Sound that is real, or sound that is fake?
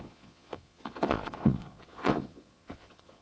fake